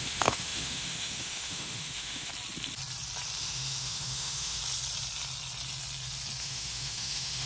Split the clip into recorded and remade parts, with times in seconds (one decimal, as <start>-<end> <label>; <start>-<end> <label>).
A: 0.0-2.3 remade; 2.3-3.4 recorded; 3.4-4.6 remade; 4.6-6.4 recorded; 6.4-7.5 remade